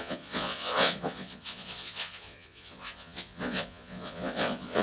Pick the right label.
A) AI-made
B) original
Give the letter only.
A